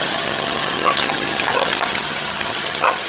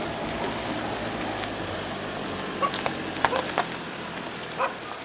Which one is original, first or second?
second